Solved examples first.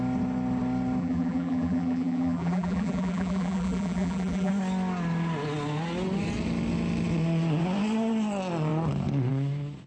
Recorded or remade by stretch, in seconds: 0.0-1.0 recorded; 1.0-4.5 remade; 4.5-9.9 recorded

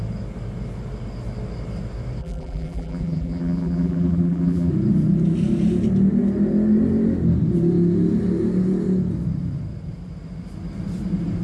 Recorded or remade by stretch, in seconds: 0.0-2.2 recorded; 2.2-4.7 remade; 4.7-11.4 recorded

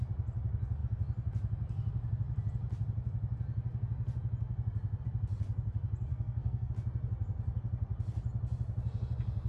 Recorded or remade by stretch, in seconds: 0.0-6.1 recorded; 6.1-6.7 remade; 6.7-9.5 recorded

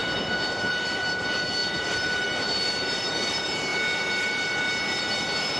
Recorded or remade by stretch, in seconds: 0.0-0.7 recorded; 0.7-5.6 remade